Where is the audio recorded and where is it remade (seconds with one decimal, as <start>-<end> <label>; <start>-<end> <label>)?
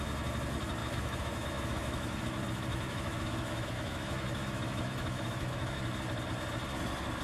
0.0-0.8 recorded; 0.8-2.2 remade; 2.2-2.7 recorded; 2.7-5.8 remade; 5.8-7.2 recorded